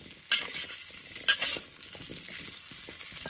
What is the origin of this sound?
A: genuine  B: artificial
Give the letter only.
A